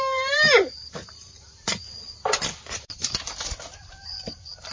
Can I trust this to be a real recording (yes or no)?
no